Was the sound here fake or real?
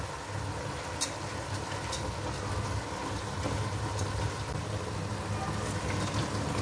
real